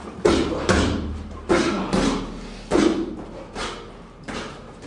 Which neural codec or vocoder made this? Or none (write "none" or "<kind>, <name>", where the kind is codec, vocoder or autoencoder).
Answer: none